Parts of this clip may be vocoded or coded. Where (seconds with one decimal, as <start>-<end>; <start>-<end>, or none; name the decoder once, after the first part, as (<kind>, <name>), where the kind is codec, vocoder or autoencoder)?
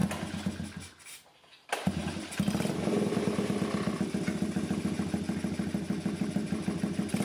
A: 0.8-2.0 (vocoder, BigVGAN v2); 6.3-7.2